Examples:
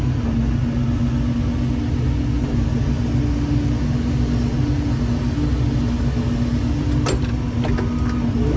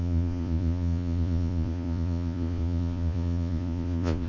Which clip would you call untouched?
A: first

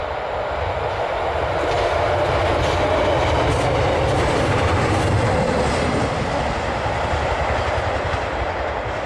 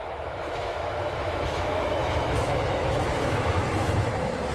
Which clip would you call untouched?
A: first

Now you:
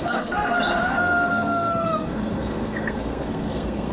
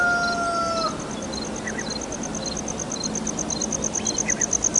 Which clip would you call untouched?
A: second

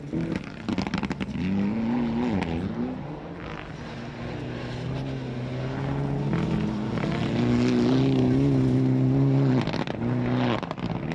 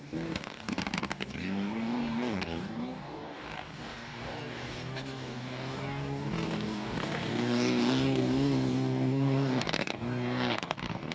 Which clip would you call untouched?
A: first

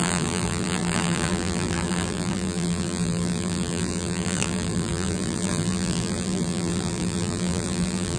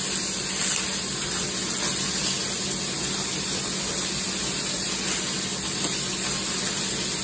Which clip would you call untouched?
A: second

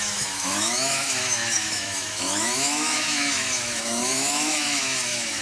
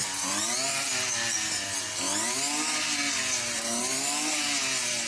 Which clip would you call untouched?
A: second